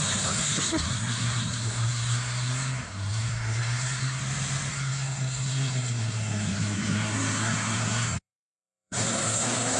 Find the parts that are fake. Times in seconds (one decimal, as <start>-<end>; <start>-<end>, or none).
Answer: 0.0-4.2; 4.7-9.8